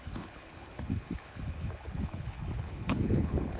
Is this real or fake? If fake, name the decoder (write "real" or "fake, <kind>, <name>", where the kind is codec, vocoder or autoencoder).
fake, codec, HILCodec